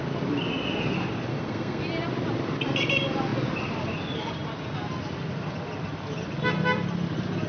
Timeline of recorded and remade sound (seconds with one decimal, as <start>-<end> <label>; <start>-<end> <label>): 0.0-1.3 recorded; 1.3-1.8 remade; 1.8-7.5 recorded